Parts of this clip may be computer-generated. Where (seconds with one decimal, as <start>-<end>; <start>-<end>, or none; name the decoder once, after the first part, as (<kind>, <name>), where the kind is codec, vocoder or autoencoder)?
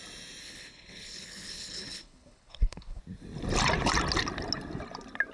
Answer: 0.4-3.0 (codec, HILCodec)